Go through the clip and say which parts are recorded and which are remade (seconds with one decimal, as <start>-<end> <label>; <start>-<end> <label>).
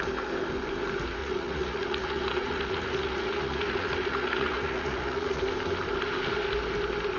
0.0-1.2 recorded; 1.2-5.4 remade; 5.4-7.2 recorded